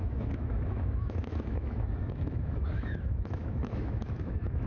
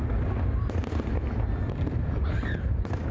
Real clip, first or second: second